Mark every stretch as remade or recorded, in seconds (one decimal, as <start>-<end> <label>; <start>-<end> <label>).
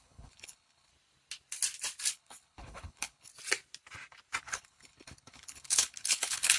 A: 0.0-0.9 remade; 0.9-2.1 recorded; 2.1-3.3 remade; 3.3-4.4 recorded; 4.4-6.6 remade